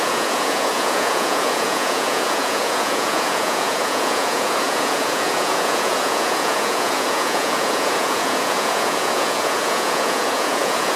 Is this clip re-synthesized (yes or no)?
yes